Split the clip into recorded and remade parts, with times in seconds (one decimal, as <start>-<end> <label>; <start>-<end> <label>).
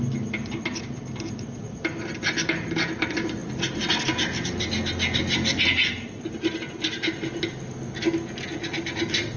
0.0-9.4 recorded